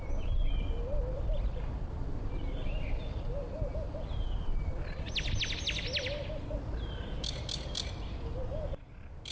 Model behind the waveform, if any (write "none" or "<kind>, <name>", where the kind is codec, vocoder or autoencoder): none